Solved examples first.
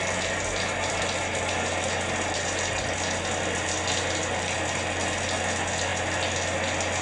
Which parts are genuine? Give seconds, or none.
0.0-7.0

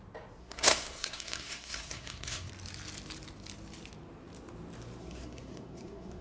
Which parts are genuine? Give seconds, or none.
0.0-0.4; 2.5-5.0

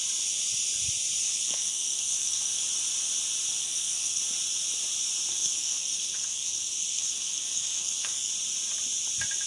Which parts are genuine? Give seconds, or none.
0.0-1.2; 2.6-3.6; 4.2-5.3; 8.3-9.5

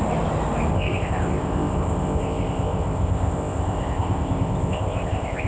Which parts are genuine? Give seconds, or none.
0.0-0.7

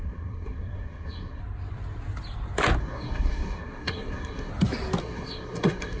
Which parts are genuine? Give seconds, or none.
1.4-2.8; 4.5-5.0

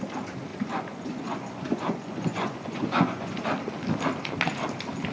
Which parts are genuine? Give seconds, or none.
0.0-0.5; 3.4-5.1

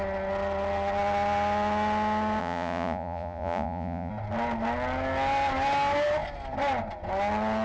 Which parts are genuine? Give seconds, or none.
0.0-2.4; 4.1-7.6

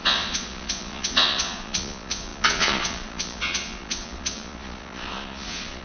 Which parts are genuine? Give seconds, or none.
none